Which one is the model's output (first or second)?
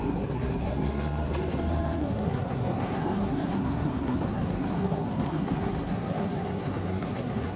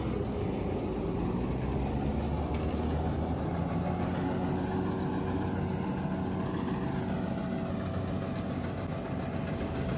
first